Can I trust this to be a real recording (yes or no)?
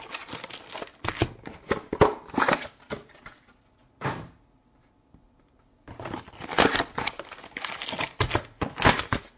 yes